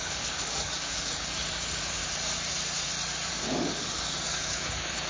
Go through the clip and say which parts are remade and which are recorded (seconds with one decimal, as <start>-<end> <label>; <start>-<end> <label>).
0.0-2.0 remade; 2.0-3.3 recorded; 3.3-5.1 remade